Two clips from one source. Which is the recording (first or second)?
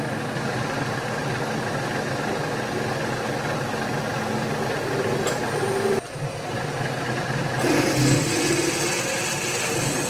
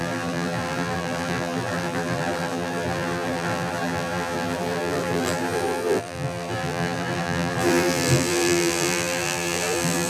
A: first